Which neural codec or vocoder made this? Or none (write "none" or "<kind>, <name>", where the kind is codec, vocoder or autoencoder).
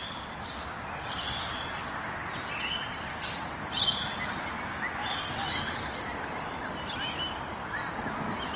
none